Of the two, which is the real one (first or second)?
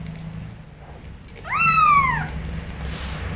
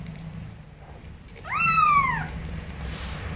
first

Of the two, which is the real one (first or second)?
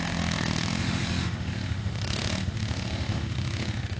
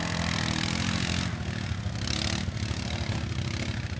second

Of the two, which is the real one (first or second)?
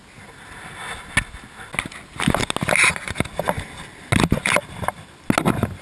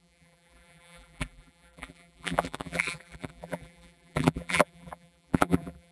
first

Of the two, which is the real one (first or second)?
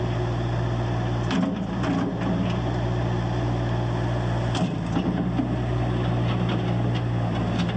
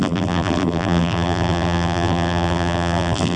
first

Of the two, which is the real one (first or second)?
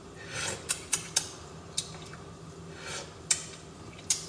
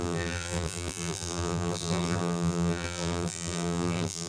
first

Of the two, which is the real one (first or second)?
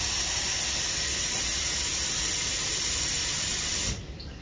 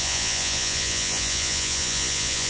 first